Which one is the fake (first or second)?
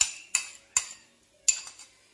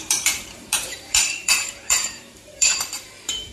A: second